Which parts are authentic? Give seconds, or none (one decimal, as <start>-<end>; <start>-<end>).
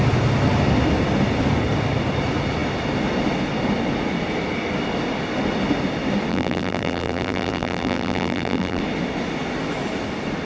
0.0-6.3; 8.8-10.5